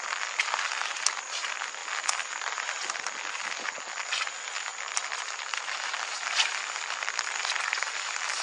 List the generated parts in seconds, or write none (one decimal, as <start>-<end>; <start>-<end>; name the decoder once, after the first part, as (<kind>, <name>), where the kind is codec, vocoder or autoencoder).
4.7-7.6 (vocoder, BigVGAN v2)